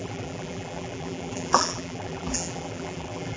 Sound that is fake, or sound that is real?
fake